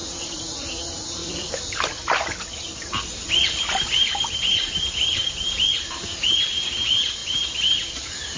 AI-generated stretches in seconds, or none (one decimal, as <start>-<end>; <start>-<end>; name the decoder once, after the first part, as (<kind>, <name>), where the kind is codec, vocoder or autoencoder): 0.0-0.7 (vocoder, BigVGAN v2); 1.2-5.3